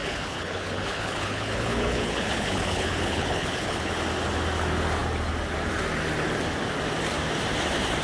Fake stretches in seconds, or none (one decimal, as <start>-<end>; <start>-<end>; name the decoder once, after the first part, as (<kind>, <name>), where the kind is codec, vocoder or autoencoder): 0.0-3.9 (codec, HILCodec)